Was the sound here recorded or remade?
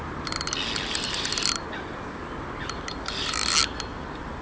recorded